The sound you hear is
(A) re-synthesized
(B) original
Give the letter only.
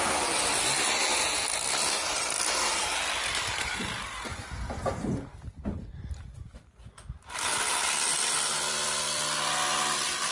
B